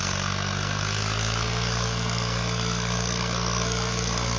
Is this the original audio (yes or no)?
no